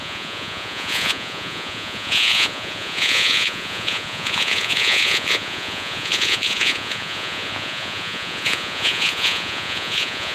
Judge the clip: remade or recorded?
remade